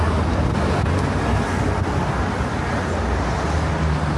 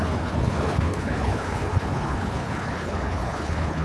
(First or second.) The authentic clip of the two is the first